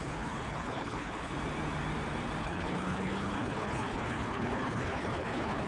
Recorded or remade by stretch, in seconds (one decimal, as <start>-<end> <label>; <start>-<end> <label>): 0.0-1.3 remade; 1.3-2.4 recorded; 2.4-5.7 remade